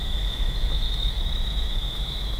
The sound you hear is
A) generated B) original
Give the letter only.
A